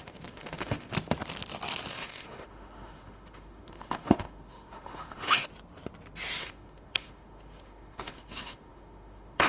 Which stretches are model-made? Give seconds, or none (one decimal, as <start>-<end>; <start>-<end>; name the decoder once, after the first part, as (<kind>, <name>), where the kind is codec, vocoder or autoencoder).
0.0-0.9 (autoencoder, DAC-VAE); 1.9-5.5; 6.4-9.5